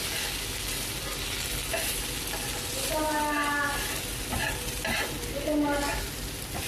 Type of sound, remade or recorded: recorded